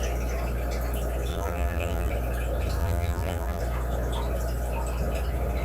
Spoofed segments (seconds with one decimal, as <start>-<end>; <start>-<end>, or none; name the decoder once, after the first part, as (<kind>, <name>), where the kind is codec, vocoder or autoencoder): 1.3-2.1 (vocoder, BigVGAN v2); 2.8-3.6